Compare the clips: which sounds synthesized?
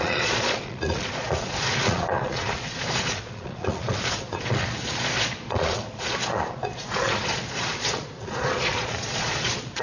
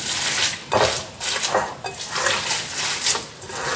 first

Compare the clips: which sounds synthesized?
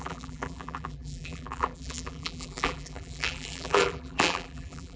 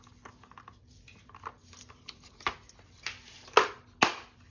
first